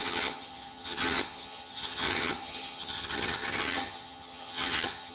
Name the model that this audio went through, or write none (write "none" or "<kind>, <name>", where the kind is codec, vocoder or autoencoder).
vocoder, HiFi-GAN